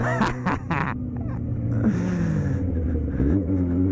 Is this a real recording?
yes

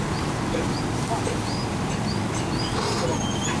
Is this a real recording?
yes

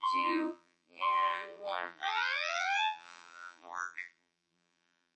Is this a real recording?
no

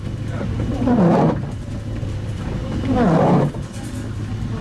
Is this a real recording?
yes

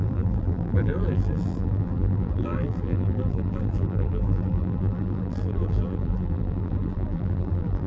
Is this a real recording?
no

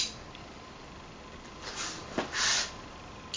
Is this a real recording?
yes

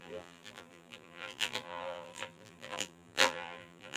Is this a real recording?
no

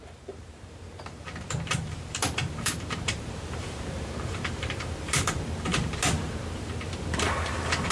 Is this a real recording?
no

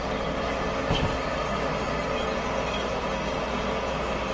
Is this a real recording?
yes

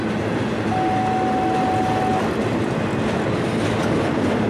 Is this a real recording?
yes